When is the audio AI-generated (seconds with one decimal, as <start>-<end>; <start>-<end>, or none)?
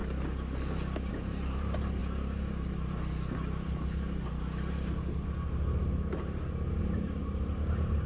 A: 1.1-2.0; 6.8-8.1